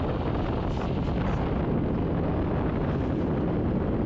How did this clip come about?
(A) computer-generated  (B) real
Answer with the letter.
B